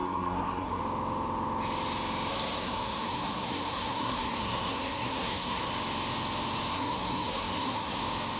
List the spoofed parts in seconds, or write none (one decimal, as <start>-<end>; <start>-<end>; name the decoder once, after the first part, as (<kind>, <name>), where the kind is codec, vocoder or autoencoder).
0.0-0.8 (codec, SNAC); 2.3-5.7; 6.7-8.0